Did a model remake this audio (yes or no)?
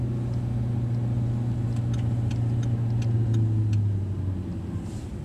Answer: no